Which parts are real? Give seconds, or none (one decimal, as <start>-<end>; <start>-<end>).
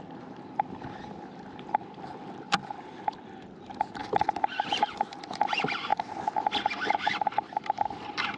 4.0-4.7; 5.9-7.2